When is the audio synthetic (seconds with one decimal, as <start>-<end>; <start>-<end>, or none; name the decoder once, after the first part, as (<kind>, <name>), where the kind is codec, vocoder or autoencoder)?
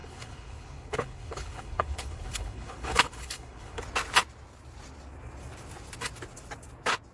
0.0-3.8 (codec, HILCodec)